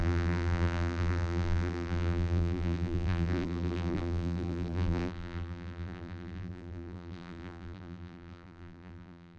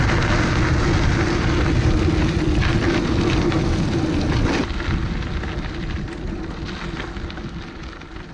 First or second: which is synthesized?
first